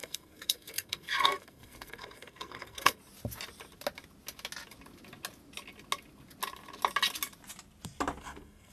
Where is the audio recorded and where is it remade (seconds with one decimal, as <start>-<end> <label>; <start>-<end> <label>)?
0.0-3.0 remade; 3.0-8.2 recorded; 8.2-8.7 remade